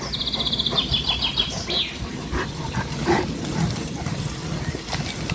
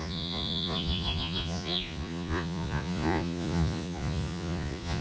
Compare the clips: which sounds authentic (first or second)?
first